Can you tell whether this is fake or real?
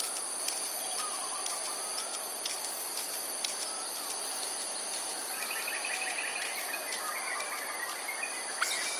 real